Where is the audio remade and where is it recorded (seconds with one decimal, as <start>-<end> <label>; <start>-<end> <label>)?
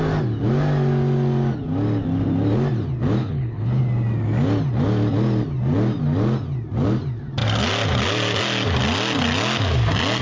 0.0-3.2 recorded; 3.2-3.8 remade; 3.8-10.2 recorded